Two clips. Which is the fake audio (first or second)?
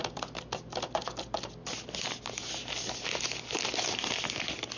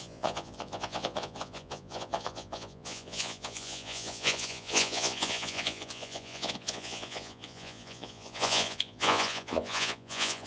second